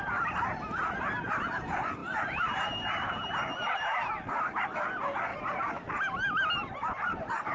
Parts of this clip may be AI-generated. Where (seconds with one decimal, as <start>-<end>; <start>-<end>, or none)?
2.0-2.8; 5.3-5.9